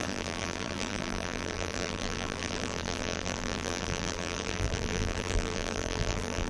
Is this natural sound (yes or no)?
no